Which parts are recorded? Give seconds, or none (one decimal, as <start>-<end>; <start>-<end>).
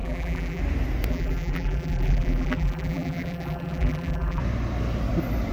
0.6-1.1; 4.4-5.5